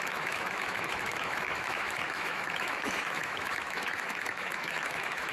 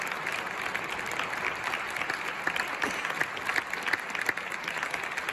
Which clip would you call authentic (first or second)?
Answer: second